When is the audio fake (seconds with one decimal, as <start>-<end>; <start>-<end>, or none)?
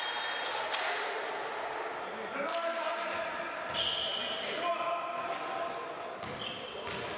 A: 2.5-3.4